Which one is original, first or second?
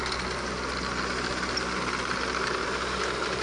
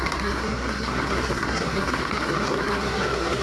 first